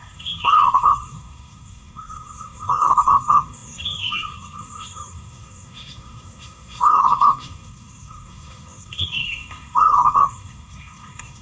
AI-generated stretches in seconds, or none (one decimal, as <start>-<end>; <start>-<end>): 0.0-11.4